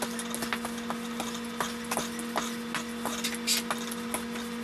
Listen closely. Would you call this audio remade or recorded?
recorded